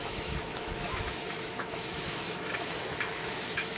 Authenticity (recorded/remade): remade